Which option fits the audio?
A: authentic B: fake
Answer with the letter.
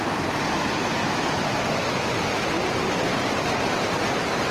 A